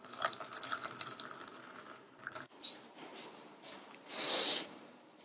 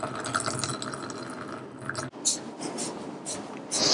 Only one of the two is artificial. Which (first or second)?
first